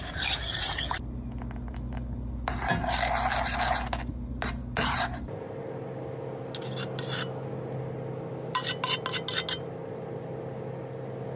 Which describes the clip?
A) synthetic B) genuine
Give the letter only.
B